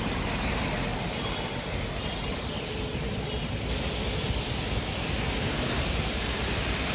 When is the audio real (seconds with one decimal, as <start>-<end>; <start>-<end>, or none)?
0.0-6.9